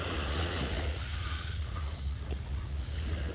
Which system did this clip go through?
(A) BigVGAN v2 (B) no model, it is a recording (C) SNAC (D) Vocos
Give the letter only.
D